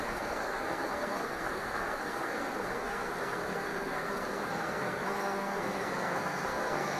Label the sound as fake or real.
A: fake